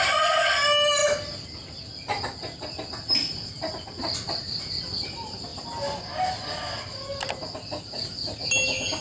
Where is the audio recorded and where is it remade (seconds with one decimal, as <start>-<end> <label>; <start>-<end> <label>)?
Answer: 0.0-9.0 recorded